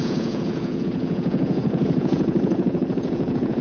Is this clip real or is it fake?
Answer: fake